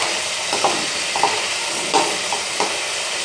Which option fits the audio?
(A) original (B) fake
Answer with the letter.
A